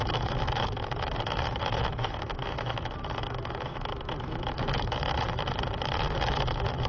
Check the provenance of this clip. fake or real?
fake